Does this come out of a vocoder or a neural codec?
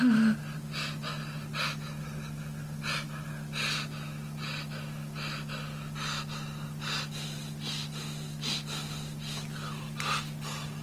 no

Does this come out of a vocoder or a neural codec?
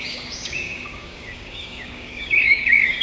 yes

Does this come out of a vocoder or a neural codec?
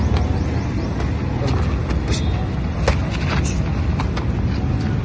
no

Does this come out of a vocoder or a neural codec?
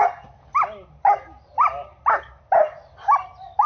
no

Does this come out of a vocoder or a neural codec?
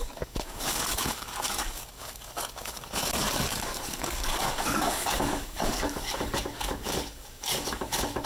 yes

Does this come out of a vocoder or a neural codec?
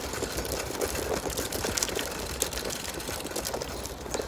no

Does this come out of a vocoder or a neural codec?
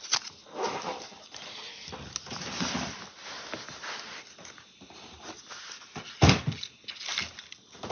no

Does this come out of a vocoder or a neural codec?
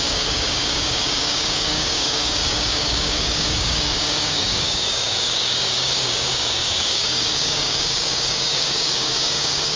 yes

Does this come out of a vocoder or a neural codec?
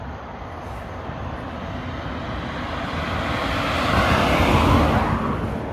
no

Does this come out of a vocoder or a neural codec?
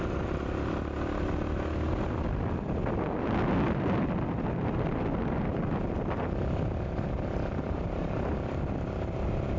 no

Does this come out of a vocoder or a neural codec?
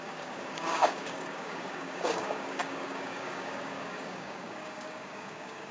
yes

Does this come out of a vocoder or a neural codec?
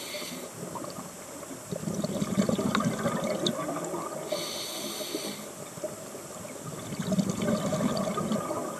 no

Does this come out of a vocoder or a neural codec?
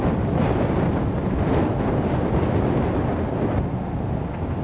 no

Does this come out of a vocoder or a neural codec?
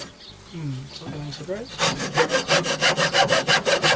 no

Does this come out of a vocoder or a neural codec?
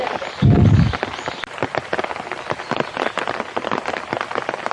no